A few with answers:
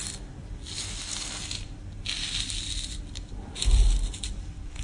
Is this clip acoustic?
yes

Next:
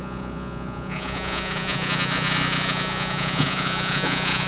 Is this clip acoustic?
no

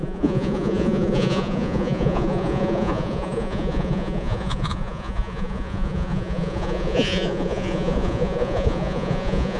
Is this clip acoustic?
no